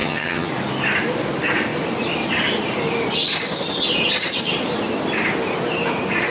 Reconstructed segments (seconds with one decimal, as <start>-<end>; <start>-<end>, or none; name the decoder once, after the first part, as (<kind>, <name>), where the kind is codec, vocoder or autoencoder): 0.0-0.5 (vocoder, HiFi-GAN)